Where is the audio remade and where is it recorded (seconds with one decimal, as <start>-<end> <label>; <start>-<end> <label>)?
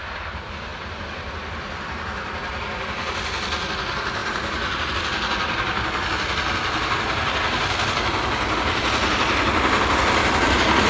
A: 0.0-4.2 recorded; 4.2-4.9 remade; 4.9-10.9 recorded